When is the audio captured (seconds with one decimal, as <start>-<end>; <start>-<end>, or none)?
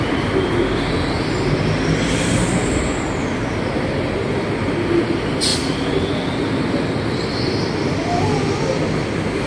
0.0-9.5